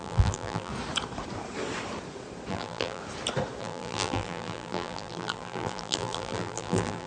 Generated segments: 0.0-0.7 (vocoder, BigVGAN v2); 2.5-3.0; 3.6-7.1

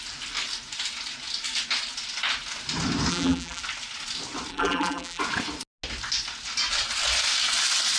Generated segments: 3.1-3.6 (vocoder, BigVGAN v2); 4.5-5.2

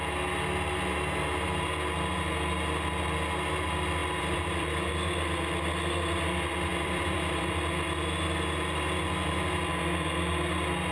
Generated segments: 4.0-4.9 (vocoder, BigVGAN v2); 6.7-7.5

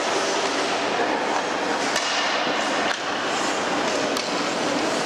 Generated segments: 0.5-1.2 (vocoder, BigVGAN v2)

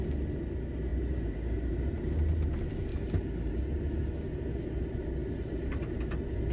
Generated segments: 0.9-2.2 (vocoder, BigVGAN v2); 2.9-3.6; 5.2-5.9

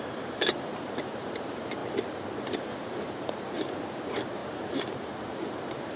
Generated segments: 0.0-1.8 (vocoder, BigVGAN v2); 2.4-6.0